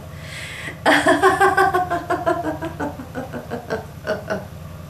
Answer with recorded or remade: recorded